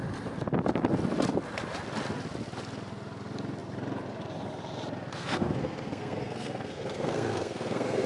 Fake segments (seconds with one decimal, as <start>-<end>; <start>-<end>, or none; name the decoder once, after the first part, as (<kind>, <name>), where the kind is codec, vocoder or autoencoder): 5.1-8.1 (codec, SNAC)